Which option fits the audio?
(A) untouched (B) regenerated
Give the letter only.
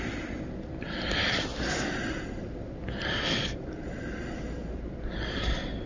A